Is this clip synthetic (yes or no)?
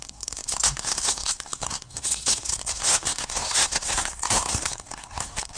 yes